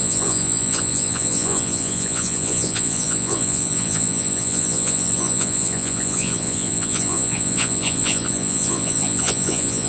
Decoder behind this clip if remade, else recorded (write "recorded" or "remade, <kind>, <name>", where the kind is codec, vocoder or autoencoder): remade, vocoder, Vocos